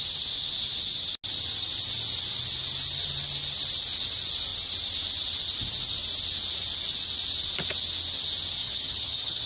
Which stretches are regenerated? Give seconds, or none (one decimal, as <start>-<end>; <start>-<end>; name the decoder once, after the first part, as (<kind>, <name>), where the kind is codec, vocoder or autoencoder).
8.6-9.5 (vocoder, HiFi-GAN)